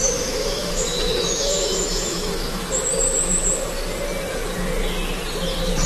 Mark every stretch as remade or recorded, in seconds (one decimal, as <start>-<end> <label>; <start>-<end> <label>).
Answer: 0.0-2.8 remade; 2.8-5.9 recorded